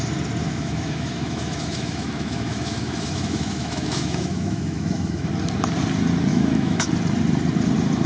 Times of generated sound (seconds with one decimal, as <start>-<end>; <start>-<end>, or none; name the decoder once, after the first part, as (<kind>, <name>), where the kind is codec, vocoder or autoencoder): 0.4-5.3 (autoencoder, DAC-VAE); 6.3-6.9